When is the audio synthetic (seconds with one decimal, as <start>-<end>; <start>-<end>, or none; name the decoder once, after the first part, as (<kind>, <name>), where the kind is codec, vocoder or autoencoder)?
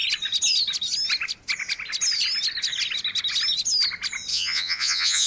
4.3-5.3 (vocoder, Vocos)